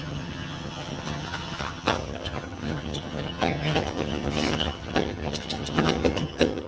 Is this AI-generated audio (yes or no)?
yes